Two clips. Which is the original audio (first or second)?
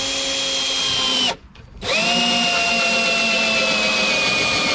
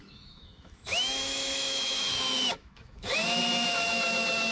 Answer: first